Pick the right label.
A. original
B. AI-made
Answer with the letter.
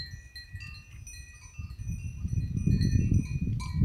A